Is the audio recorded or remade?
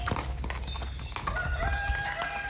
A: recorded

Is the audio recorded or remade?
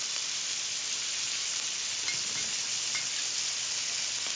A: recorded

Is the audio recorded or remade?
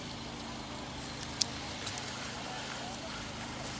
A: recorded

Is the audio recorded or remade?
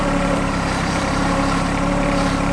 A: remade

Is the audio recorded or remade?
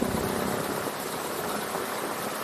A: recorded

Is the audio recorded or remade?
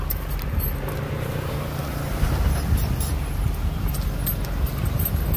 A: recorded